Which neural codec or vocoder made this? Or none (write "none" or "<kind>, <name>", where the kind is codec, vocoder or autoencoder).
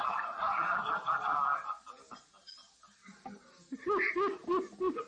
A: none